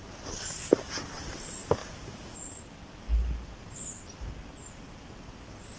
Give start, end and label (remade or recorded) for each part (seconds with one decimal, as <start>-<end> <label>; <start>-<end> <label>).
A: 0.0-5.8 recorded

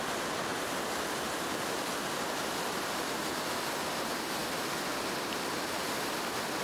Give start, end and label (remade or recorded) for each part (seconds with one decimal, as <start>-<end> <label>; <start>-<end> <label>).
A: 0.0-6.6 recorded

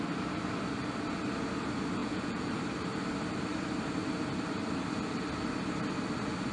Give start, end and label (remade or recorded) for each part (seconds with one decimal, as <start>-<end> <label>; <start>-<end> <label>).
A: 0.0-2.0 recorded; 2.0-2.5 remade; 2.5-6.5 recorded

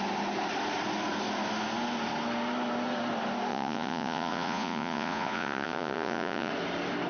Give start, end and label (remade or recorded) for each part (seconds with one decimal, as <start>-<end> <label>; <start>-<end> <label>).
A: 0.0-3.5 recorded; 3.5-6.5 remade; 6.5-7.1 recorded